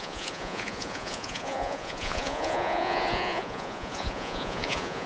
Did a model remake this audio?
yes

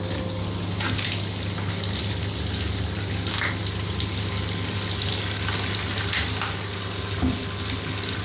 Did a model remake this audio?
no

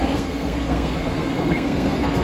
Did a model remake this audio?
yes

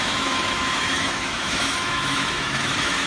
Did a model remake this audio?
yes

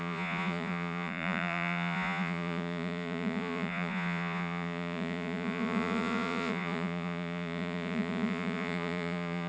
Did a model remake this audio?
yes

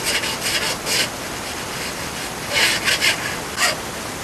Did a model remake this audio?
no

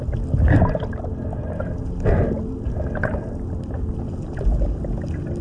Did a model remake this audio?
no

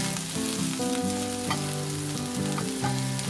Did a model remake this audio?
no